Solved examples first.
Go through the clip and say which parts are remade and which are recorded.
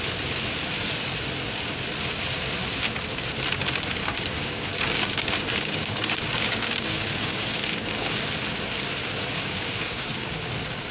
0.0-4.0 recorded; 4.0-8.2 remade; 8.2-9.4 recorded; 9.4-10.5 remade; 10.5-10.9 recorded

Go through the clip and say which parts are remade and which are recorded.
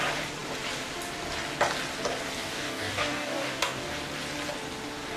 0.0-2.4 recorded; 2.4-3.9 remade; 3.9-5.2 recorded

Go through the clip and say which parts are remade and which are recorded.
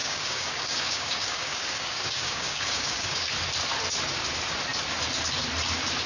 0.0-3.3 remade; 3.3-6.1 recorded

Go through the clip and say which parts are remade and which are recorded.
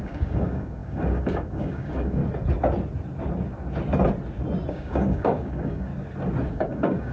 0.0-2.2 remade; 2.2-4.7 recorded; 4.7-5.9 remade; 5.9-6.5 recorded; 6.5-7.1 remade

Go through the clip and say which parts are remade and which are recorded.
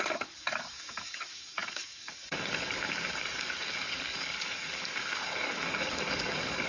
0.0-6.7 remade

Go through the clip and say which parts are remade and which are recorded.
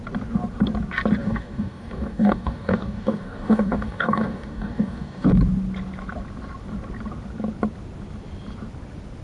0.0-1.2 recorded; 1.2-5.3 remade; 5.3-9.2 recorded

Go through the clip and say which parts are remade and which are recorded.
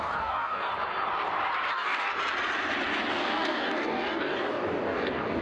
0.0-0.7 remade; 0.7-1.7 recorded; 1.7-2.1 remade; 2.1-3.1 recorded; 3.1-5.4 remade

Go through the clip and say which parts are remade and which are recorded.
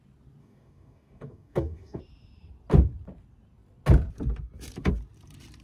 0.0-0.4 recorded; 0.4-2.0 remade; 2.0-5.6 recorded